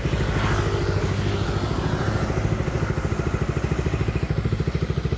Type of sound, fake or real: real